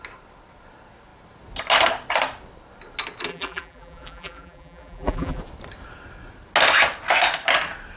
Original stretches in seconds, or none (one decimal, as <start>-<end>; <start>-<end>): 0.0-3.3; 5.4-8.0